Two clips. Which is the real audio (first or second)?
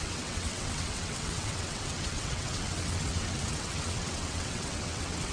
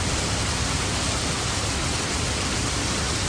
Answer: second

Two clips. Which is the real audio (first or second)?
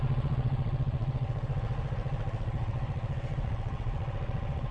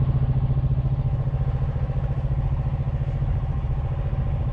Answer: second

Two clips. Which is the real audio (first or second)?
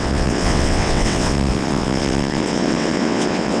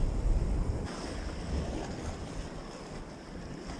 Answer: second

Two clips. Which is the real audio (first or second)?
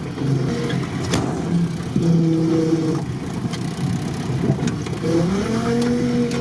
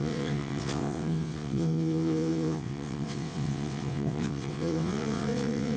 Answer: first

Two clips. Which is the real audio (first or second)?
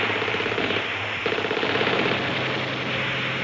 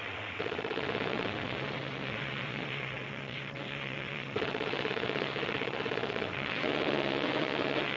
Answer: first